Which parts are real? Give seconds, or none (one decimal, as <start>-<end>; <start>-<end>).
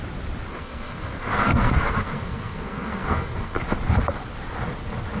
0.0-0.5; 3.6-5.2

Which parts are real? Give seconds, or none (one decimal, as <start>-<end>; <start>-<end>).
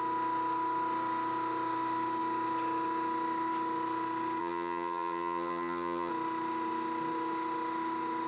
0.0-4.4; 6.1-8.3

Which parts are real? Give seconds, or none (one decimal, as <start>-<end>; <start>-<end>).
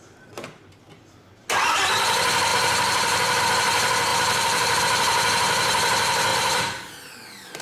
0.0-2.5; 3.4-4.1; 4.8-6.3; 6.9-7.6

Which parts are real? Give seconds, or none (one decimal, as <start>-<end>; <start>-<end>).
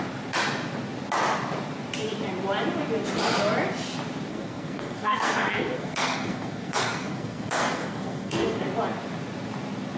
0.0-4.3; 8.7-10.0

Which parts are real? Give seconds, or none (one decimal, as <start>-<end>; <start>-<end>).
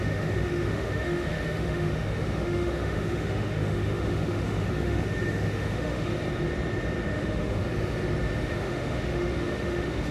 6.1-7.1; 7.6-8.4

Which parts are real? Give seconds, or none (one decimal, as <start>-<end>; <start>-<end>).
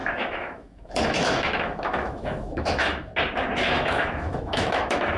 3.1-3.7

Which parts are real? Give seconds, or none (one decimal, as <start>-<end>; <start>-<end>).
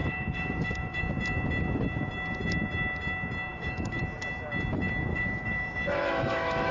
1.0-3.5; 4.0-5.1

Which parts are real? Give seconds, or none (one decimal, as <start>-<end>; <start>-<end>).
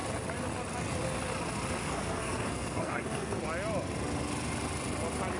0.0-1.8; 3.4-5.4